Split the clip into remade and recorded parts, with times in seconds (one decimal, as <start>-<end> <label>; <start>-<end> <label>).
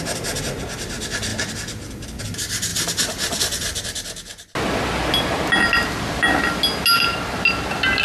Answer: 0.0-1.3 recorded; 1.3-2.2 remade; 2.2-2.7 recorded; 2.7-3.4 remade; 3.4-8.0 recorded